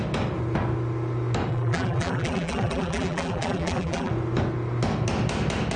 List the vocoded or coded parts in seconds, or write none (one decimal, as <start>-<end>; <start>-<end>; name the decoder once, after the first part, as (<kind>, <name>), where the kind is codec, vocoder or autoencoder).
1.5-4.1 (vocoder, BigVGAN v2)